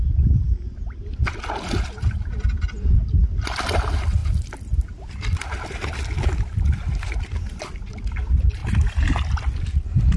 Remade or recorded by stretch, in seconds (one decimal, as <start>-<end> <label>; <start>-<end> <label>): 0.0-4.2 recorded; 4.2-5.1 remade; 5.1-10.2 recorded